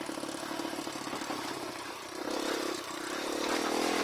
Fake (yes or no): no